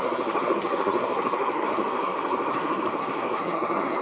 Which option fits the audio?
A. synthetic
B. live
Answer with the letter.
A